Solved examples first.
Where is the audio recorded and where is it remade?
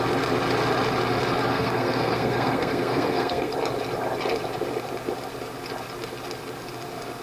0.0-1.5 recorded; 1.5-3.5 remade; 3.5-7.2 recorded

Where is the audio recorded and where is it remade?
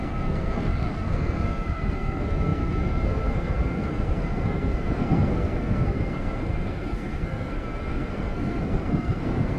0.0-9.6 remade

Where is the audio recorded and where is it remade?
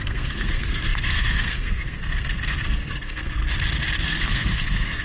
0.0-3.4 remade; 3.4-4.0 recorded; 4.0-5.0 remade